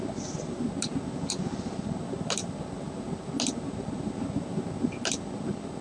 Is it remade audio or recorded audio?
recorded